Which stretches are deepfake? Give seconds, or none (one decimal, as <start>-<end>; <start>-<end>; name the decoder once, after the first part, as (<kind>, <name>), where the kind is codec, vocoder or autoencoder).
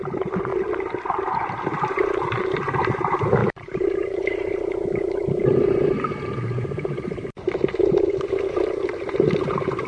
0.0-0.5 (vocoder, BigVGAN v2); 1.1-9.9